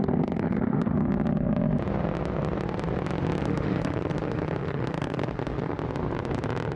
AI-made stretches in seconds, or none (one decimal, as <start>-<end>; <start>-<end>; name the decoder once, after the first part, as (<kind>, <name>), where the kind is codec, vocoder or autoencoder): 0.0-1.0 (autoencoder, DAC-VAE); 3.4-5.8